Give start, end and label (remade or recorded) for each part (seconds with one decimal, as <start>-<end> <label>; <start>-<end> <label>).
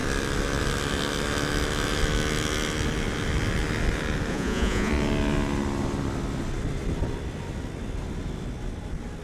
0.0-4.3 recorded; 4.3-4.9 remade; 4.9-9.2 recorded